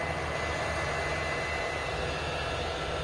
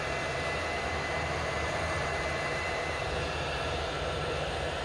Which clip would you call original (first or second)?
first